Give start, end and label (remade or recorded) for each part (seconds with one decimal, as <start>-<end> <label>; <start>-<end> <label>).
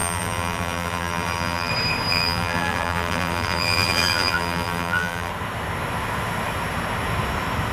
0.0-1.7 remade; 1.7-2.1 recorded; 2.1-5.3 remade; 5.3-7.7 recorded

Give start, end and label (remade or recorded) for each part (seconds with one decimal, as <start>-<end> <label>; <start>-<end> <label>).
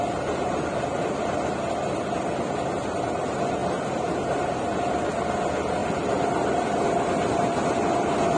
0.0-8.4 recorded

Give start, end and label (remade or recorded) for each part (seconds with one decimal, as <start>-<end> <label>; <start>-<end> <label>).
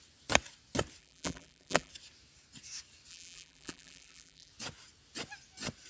0.0-1.0 recorded; 1.0-1.9 remade; 1.9-3.1 recorded; 3.1-4.5 remade; 4.5-5.9 recorded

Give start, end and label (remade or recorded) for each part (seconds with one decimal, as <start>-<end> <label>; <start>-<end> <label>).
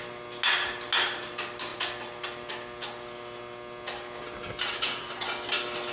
0.0-5.9 recorded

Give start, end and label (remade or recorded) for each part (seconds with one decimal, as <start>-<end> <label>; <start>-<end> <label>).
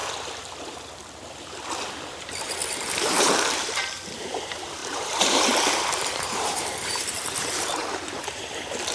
0.0-2.1 recorded; 2.1-8.9 remade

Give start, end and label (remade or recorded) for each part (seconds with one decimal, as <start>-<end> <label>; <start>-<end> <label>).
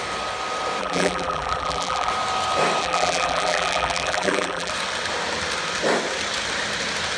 0.0-0.8 recorded; 0.8-2.1 remade; 2.1-2.8 recorded; 2.8-4.7 remade; 4.7-7.2 recorded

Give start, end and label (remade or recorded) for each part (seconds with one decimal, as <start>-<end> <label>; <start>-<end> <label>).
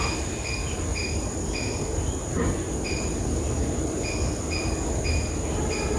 0.0-0.9 recorded; 0.9-4.4 remade; 4.4-6.0 recorded